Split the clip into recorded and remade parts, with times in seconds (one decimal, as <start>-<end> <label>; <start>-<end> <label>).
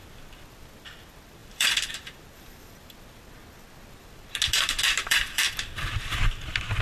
0.0-1.4 recorded; 1.4-1.9 remade; 1.9-5.0 recorded; 5.0-5.5 remade; 5.5-6.8 recorded